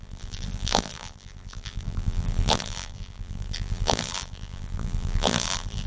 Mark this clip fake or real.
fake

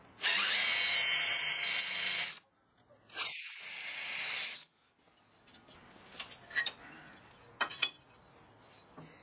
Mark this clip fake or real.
real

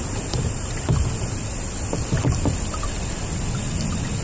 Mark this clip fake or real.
fake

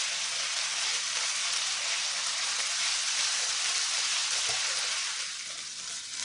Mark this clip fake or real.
real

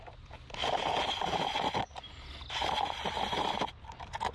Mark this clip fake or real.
real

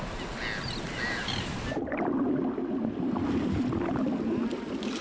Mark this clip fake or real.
real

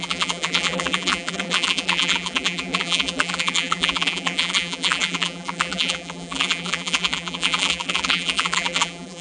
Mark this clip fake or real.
fake